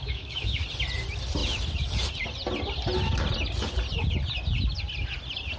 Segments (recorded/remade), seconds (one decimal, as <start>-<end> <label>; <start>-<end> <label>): 0.0-0.6 remade; 0.6-5.6 recorded